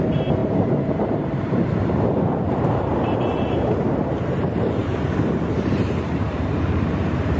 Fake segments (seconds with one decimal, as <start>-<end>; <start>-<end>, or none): 0.0-7.4